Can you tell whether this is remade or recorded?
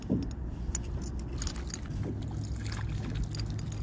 recorded